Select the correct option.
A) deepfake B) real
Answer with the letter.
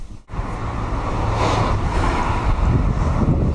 B